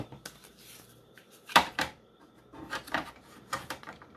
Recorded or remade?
remade